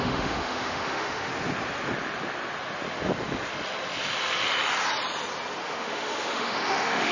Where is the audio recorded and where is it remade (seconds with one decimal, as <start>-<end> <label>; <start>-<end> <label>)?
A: 0.0-1.3 remade; 1.3-5.6 recorded; 5.6-7.1 remade